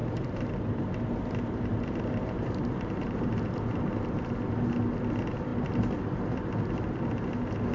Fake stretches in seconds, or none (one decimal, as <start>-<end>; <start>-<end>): 0.0-3.3

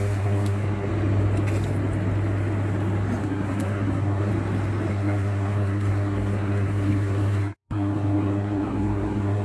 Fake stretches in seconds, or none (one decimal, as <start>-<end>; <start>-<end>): 0.0-0.9; 3.2-4.3; 4.9-9.4